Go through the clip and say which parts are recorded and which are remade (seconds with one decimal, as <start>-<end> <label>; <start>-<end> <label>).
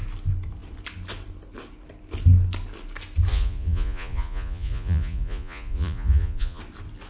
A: 0.0-3.3 recorded; 3.3-6.6 remade; 6.6-7.1 recorded